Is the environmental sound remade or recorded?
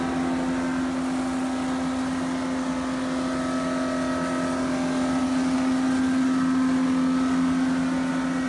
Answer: recorded